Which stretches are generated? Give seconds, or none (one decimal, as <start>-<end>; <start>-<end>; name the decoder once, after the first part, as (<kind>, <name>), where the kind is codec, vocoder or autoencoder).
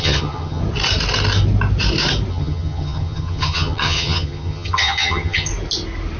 0.0-0.6 (vocoder, HiFi-GAN); 2.3-5.5